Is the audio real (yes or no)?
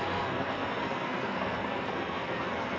no